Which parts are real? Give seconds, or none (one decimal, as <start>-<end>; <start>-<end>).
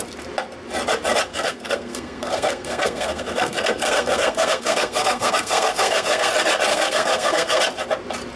0.0-1.3; 6.3-6.7; 7.6-8.4